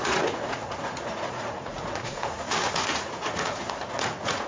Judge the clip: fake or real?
fake